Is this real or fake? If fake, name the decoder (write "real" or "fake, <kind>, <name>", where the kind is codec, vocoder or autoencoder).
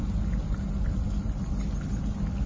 real